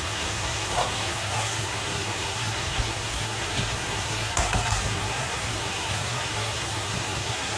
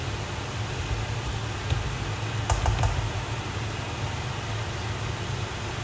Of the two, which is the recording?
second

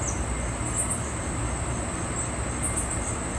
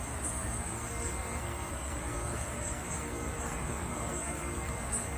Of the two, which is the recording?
first